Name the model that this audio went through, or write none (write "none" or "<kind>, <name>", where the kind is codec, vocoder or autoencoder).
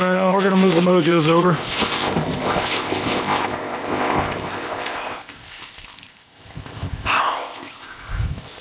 codec, ZipCodec